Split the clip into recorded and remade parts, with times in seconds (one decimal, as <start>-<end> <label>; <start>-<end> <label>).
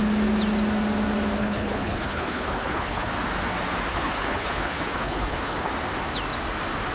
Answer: 0.0-1.4 recorded; 1.4-3.1 remade; 3.1-3.9 recorded; 3.9-5.7 remade; 5.7-6.9 recorded